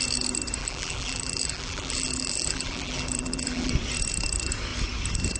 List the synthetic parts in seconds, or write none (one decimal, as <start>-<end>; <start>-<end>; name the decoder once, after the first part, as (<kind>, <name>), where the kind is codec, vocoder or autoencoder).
0.6-3.7 (vocoder, BigVGAN v2)